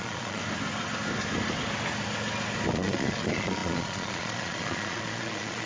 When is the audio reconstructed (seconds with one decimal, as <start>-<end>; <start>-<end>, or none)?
0.0-0.4; 2.7-5.7